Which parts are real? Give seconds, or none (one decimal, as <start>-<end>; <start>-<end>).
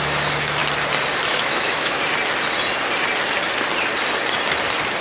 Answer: 0.6-1.2; 2.0-5.0